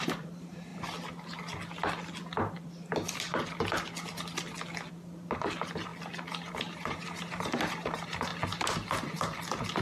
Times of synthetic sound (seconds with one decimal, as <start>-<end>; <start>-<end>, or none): 0.0-0.7; 4.9-5.9; 6.5-8.3

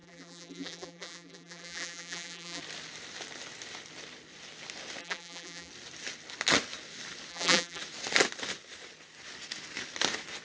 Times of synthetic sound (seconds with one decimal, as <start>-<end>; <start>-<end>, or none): 0.0-2.6; 5.0-5.7; 7.3-7.8

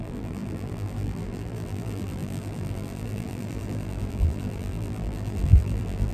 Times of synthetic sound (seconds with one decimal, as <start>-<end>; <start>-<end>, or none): 0.0-6.1

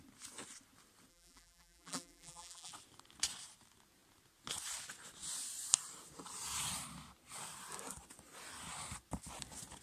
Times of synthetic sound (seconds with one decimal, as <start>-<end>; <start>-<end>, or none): 1.1-2.7

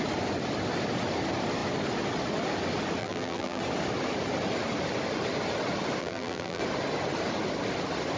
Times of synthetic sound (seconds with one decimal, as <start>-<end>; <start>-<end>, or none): 3.0-3.6; 6.0-6.6

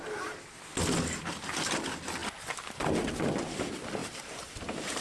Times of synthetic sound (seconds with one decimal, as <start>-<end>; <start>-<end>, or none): 4.0-5.0

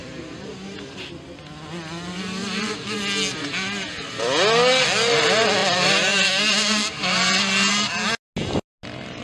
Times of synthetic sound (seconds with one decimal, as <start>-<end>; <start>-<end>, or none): 0.0-1.1; 2.4-3.0; 5.6-7.9

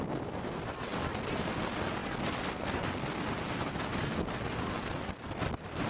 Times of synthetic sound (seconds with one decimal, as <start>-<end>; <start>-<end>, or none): 0.9-1.6